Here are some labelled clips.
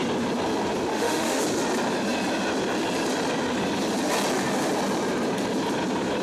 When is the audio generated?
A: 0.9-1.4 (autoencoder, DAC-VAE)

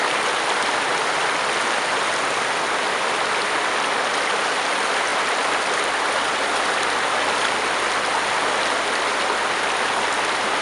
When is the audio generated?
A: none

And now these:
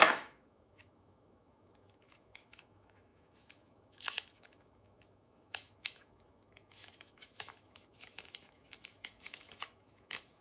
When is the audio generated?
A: 0.0-10.4 (autoencoder, DAC-VAE)